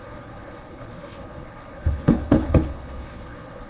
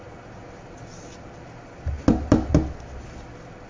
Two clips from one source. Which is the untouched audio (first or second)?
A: second